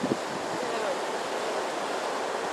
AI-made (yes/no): no